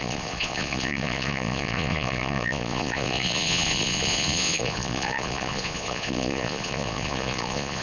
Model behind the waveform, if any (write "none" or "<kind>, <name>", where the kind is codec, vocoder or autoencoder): vocoder, Vocos